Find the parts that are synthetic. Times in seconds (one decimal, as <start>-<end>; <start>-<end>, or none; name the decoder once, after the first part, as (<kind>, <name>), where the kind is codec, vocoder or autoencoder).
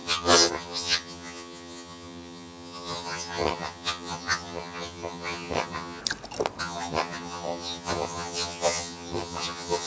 0.0-6.0 (vocoder, HiFi-GAN); 6.6-9.9